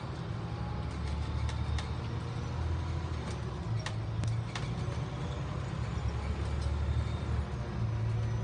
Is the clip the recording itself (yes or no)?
yes